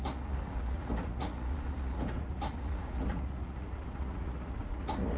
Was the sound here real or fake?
fake